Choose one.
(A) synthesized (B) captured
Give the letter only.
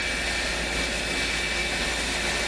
B